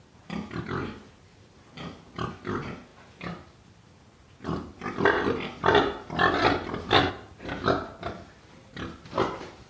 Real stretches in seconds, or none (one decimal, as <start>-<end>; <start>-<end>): 0.0-9.7